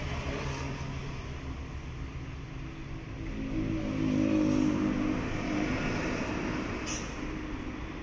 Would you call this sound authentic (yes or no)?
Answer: yes